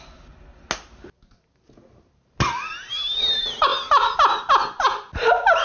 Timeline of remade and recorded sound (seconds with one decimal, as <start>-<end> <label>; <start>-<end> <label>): 0.0-5.6 recorded